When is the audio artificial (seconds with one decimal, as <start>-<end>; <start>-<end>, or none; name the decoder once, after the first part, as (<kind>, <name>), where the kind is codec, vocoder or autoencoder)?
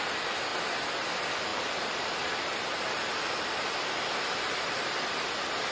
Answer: none